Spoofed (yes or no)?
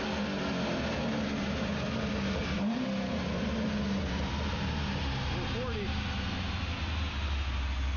no